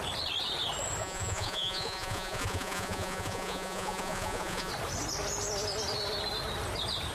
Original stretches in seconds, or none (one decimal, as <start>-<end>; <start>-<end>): 0.0-1.0; 4.7-7.1